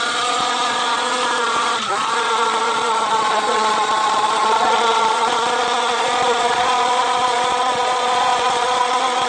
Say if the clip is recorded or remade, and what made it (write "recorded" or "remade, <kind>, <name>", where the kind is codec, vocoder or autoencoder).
remade, vocoder, Vocos